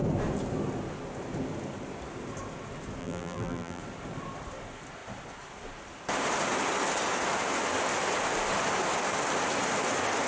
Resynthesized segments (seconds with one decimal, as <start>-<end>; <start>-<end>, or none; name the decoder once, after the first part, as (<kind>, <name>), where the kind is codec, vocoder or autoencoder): 3.0-3.8 (vocoder, BigVGAN v2)